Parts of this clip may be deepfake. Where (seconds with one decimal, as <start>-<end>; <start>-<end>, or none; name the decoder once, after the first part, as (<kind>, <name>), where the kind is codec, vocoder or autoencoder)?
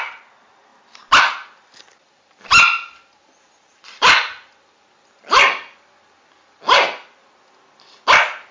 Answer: none